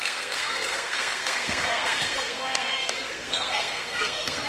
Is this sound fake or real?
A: fake